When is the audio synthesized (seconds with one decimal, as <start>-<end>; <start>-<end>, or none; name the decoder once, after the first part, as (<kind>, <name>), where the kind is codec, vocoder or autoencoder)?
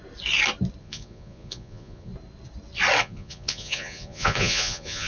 0.8-2.1 (vocoder, Vocos); 3.0-5.1